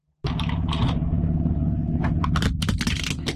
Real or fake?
real